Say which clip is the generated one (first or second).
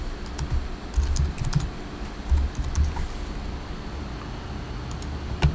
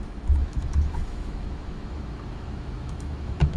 second